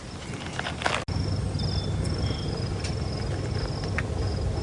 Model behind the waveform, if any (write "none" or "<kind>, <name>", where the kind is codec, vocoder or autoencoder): none